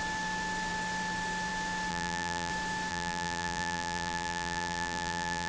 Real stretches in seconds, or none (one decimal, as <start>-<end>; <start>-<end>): 0.0-1.9; 2.5-2.9